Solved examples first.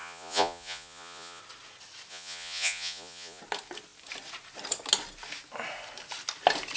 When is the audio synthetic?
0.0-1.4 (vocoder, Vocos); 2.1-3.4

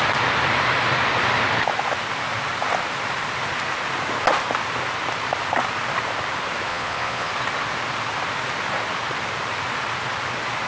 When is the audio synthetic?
6.7-7.3 (vocoder, Vocos)

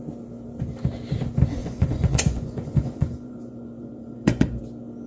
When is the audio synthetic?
1.6-4.6 (vocoder, Vocos)

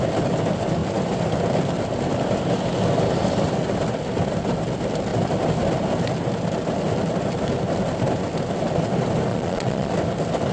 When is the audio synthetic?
9.3-9.9 (vocoder, Vocos)

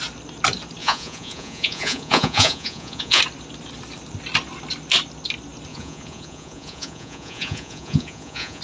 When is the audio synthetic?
0.8-3.2 (vocoder, Vocos); 5.7-8.6